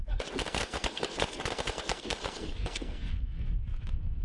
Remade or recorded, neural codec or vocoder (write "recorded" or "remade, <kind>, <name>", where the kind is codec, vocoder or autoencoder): remade, codec, SNAC